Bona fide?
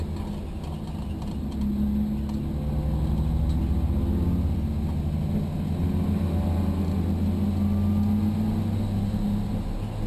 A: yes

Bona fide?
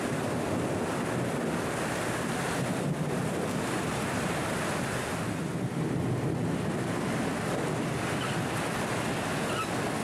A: yes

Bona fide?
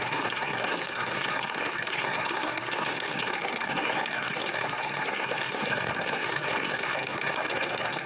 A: no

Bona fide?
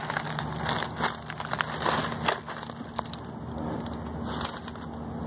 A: yes